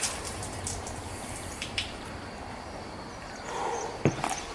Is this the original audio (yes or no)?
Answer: no